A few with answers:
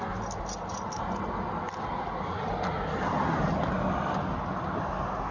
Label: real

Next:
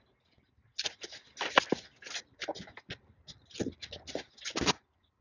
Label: real